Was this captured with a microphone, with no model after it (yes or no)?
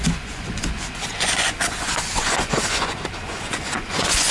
no